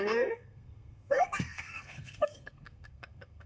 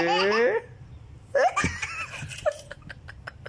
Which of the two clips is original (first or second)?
second